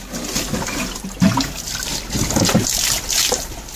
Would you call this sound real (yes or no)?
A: yes